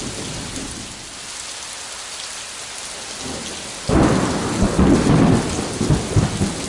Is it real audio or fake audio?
real